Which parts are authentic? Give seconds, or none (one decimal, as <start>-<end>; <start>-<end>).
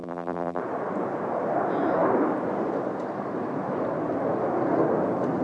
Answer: 0.6-5.4